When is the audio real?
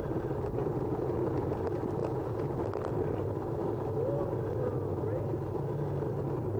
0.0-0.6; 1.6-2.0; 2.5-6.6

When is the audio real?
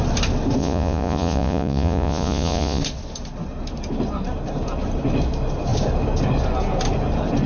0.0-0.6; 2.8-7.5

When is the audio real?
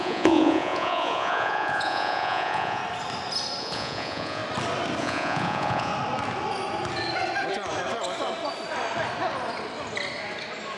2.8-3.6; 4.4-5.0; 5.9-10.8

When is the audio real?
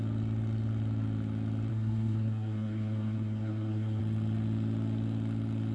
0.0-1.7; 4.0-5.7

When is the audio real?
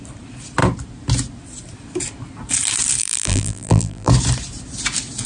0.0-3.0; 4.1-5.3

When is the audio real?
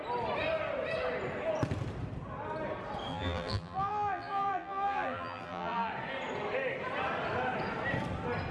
0.0-3.1; 5.9-8.5